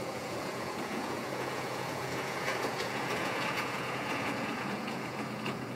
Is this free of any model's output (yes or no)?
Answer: no